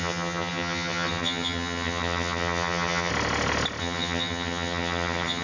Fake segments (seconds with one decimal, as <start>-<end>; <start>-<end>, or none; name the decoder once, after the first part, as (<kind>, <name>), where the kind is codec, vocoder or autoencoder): 0.0-3.1 (vocoder, HiFi-GAN); 3.8-5.4